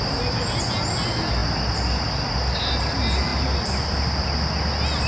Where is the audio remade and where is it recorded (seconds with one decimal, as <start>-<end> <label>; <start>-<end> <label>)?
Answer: 0.0-5.1 recorded